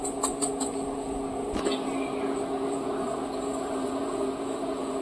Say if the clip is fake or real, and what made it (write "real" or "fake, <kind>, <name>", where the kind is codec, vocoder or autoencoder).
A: fake, vocoder, Vocos